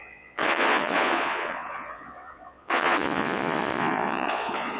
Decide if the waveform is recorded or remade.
remade